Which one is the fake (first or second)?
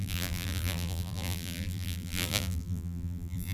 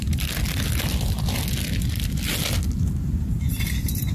first